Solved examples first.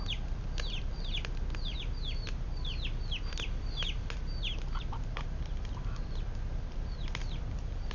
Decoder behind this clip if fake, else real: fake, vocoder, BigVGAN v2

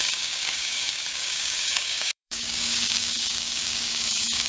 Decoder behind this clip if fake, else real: fake, codec, DAC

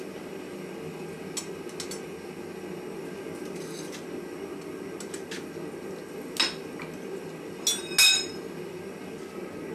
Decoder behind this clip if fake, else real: real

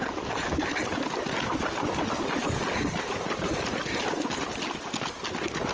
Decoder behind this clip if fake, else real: real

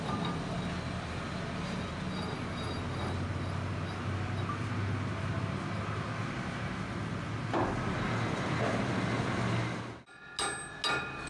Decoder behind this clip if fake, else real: real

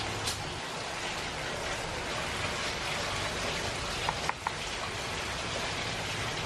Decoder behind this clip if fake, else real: real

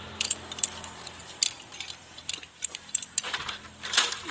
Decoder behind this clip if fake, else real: fake, vocoder, BigVGAN v2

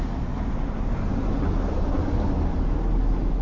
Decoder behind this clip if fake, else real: real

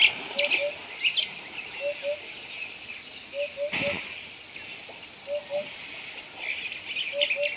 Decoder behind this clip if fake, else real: real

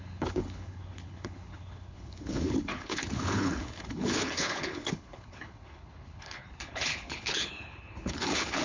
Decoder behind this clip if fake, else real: fake, codec, HILCodec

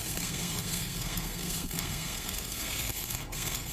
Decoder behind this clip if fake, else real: fake, codec, SNAC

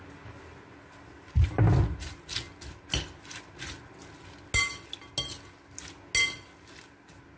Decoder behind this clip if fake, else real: real